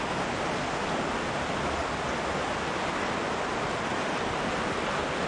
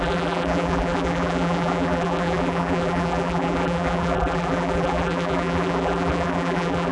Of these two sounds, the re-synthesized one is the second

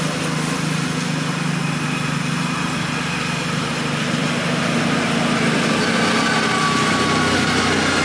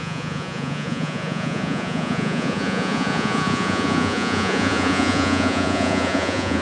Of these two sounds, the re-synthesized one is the second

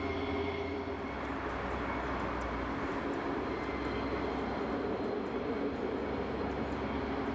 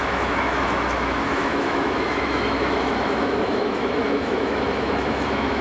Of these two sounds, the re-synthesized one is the second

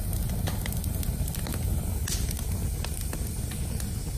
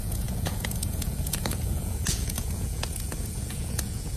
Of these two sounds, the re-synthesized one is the second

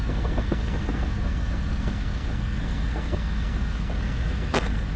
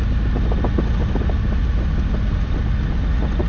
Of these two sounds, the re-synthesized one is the first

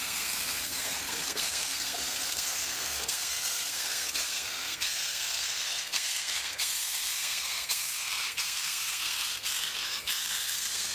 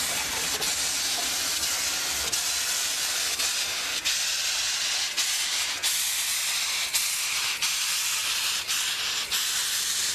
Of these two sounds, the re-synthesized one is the first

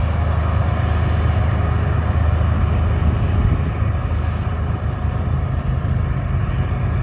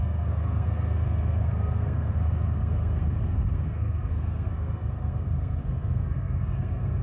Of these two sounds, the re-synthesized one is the second